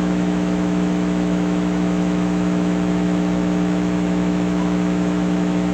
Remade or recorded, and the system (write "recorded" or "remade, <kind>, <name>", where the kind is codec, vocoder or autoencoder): remade, autoencoder, DAC-VAE